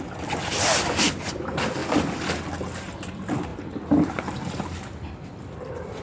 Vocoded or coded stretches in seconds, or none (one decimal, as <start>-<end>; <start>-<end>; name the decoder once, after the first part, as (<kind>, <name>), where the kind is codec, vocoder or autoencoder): none